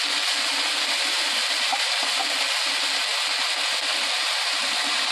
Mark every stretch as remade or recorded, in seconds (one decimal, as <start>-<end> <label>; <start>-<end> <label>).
0.0-1.7 recorded; 1.7-2.2 remade; 2.2-5.1 recorded